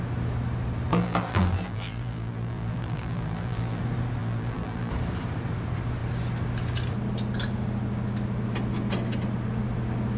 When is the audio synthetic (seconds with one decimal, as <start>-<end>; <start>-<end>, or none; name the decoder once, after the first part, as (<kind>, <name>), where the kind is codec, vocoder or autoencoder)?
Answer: 0.9-3.8 (vocoder, BigVGAN v2); 4.2-4.9